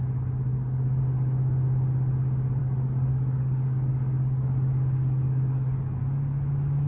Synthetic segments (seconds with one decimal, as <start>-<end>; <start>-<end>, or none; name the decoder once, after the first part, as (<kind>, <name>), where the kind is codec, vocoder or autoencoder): 0.5-1.0 (codec, DAC); 2.6-6.0